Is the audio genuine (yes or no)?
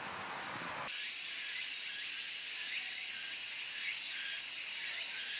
yes